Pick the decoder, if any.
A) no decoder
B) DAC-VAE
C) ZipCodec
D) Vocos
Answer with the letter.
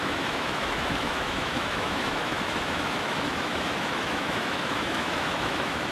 B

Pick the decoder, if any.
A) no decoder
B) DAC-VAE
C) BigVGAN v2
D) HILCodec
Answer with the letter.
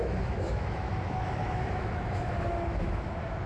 B